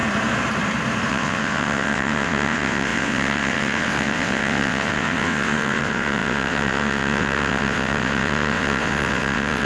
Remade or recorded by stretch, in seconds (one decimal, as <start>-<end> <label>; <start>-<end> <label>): 0.0-1.1 recorded; 1.1-9.7 remade

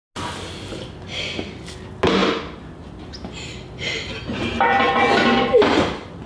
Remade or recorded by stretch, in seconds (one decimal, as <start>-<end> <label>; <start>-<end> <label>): 0.0-6.3 recorded

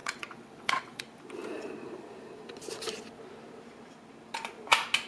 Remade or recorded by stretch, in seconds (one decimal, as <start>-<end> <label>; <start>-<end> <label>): 0.0-1.0 remade; 1.0-5.1 recorded

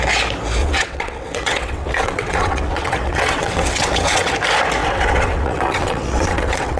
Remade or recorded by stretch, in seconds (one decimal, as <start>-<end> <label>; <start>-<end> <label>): 0.0-0.6 recorded; 0.6-4.3 remade; 4.3-4.8 recorded; 4.8-6.8 remade

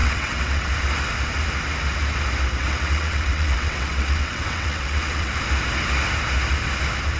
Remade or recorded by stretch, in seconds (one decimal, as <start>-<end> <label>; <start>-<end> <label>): 0.0-0.7 remade; 0.7-2.6 recorded; 2.6-5.3 remade; 5.3-7.2 recorded